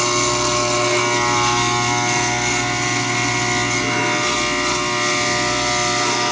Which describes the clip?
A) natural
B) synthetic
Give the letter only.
A